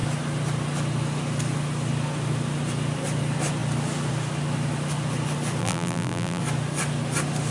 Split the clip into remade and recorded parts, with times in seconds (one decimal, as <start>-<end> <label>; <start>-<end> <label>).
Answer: 0.0-5.6 recorded; 5.6-6.4 remade; 6.4-7.5 recorded